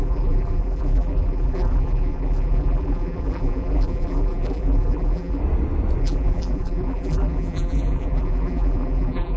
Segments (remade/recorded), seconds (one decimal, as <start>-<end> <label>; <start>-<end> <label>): 0.0-5.4 remade; 5.4-6.0 recorded; 6.0-9.4 remade